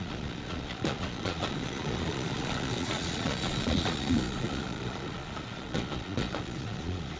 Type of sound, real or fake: fake